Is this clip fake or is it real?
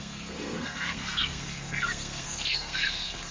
fake